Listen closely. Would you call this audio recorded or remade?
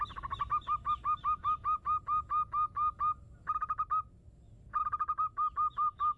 recorded